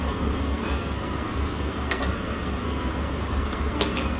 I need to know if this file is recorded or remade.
remade